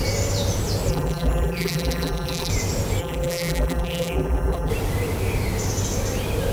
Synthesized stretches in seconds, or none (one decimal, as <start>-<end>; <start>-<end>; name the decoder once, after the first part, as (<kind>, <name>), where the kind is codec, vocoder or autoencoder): 0.9-2.5 (vocoder, BigVGAN v2); 3.0-4.7